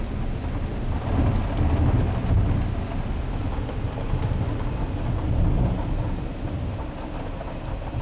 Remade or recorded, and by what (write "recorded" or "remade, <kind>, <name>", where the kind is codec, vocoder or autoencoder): recorded